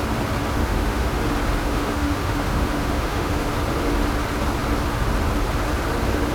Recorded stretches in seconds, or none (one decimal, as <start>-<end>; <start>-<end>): 0.0-0.6; 1.2-1.6; 3.5-6.3